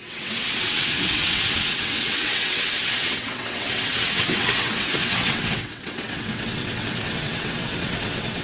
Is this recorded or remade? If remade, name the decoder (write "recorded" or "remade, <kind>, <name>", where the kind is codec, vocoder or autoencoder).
remade, vocoder, WaveNeXt